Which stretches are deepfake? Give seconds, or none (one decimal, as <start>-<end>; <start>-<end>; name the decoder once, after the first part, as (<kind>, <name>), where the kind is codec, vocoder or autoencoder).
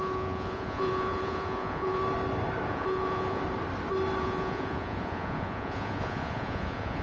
0.0-2.0 (vocoder, Vocos); 2.7-3.4; 4.2-7.0